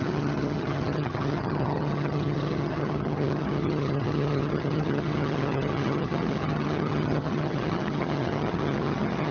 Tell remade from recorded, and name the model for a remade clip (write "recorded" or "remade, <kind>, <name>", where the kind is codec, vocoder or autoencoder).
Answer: remade, vocoder, HiFi-GAN